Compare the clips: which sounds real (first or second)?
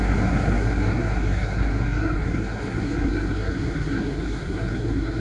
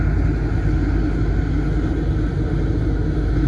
second